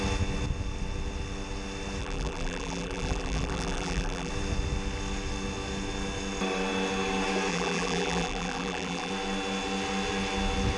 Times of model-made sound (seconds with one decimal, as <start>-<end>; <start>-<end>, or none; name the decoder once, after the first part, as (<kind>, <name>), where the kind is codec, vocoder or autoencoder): 2.0-4.3 (vocoder, BigVGAN v2); 7.5-9.1